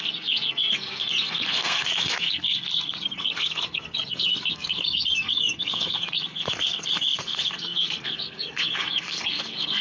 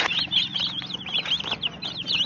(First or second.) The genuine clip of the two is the second